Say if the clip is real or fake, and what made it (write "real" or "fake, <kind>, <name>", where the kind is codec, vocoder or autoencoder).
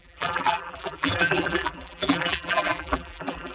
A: fake, vocoder, BigVGAN v2